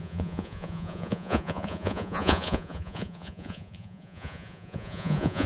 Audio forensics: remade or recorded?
remade